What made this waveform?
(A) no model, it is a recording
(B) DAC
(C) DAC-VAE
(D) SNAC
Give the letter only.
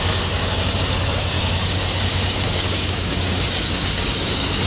B